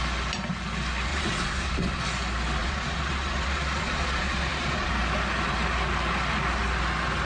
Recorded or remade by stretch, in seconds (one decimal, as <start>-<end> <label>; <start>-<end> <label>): 0.0-1.1 recorded; 1.1-2.0 remade; 2.0-2.6 recorded; 2.6-4.9 remade; 4.9-7.3 recorded